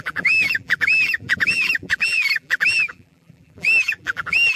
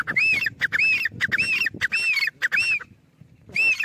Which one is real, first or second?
second